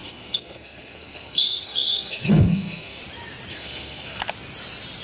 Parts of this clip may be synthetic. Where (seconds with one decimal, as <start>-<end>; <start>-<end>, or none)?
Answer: 0.0-3.0; 3.5-4.2